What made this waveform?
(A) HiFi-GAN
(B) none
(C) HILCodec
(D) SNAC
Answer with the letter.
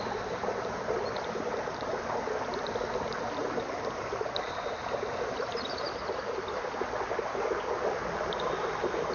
B